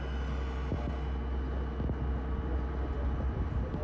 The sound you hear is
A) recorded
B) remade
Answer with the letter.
A